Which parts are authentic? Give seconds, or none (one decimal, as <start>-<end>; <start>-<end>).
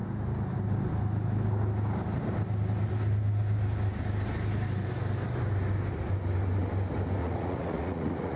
0.0-7.2